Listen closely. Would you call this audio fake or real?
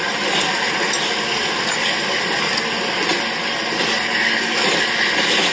real